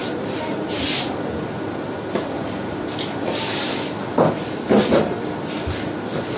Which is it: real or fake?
real